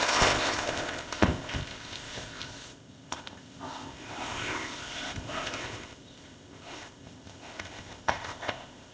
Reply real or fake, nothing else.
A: fake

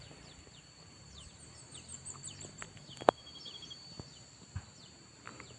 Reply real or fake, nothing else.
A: real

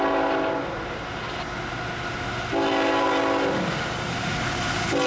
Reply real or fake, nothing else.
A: real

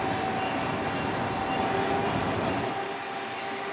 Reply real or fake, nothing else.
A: real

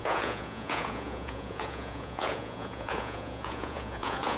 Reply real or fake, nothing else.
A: fake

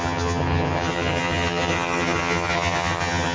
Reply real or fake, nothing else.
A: fake